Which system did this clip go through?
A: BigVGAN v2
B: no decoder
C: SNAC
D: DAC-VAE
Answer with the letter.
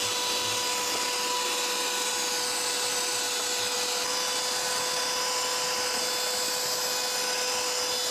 B